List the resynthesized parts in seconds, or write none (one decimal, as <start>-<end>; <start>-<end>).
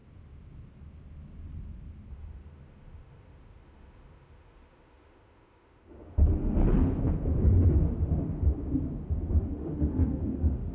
2.1-6.6; 9.4-10.7